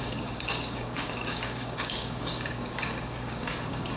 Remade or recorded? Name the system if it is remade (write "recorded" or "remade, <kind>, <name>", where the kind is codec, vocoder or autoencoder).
remade, codec, DAC